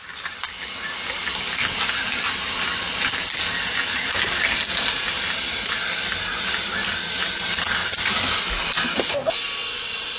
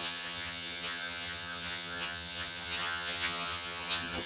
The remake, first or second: second